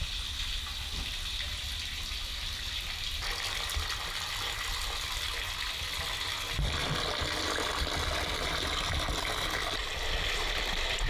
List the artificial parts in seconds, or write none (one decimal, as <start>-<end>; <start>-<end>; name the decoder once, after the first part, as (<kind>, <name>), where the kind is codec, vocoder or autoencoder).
none